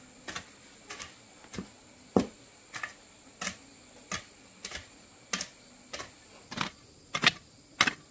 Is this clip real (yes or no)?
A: yes